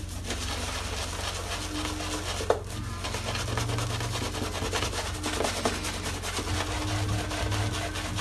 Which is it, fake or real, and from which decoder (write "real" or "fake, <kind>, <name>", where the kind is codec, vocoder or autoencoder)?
real